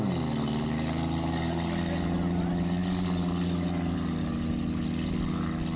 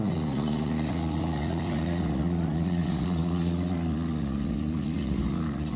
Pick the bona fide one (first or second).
first